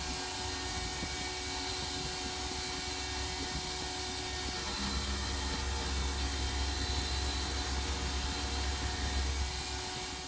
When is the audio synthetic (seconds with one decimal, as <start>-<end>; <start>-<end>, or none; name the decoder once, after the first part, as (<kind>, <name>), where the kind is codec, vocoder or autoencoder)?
none